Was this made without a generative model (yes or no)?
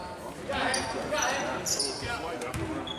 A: yes